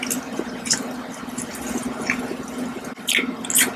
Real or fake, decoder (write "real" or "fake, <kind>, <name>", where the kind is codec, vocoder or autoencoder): real